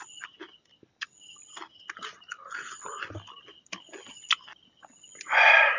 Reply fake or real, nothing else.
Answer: real